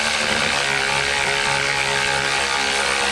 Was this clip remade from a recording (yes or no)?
no